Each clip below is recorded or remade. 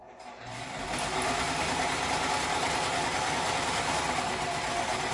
recorded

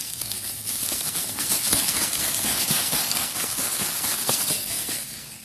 remade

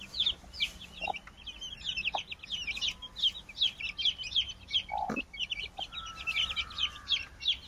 recorded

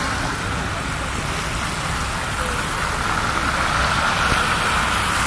recorded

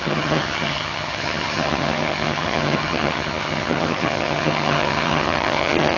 remade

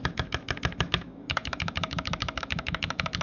remade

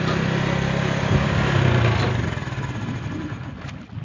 recorded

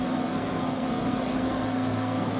remade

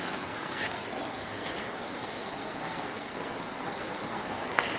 remade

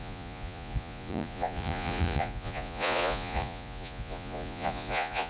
remade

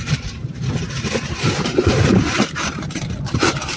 remade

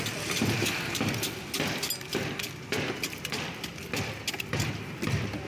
recorded